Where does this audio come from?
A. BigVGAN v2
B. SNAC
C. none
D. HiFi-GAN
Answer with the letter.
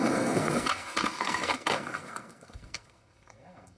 B